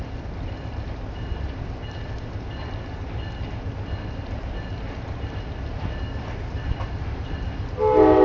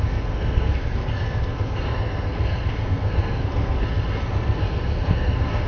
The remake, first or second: second